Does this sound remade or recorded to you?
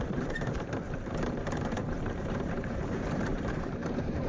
remade